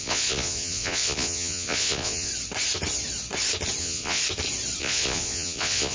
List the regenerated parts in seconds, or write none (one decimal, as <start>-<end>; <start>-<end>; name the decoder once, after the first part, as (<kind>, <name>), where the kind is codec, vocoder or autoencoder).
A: 0.0-2.3 (vocoder, Vocos); 3.8-4.2; 4.8-5.9